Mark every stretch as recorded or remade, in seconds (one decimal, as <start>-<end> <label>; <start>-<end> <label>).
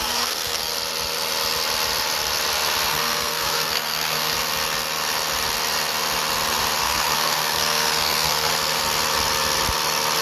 0.0-0.7 remade; 0.7-2.9 recorded; 2.9-4.3 remade; 4.3-6.8 recorded; 6.8-8.5 remade; 8.5-10.2 recorded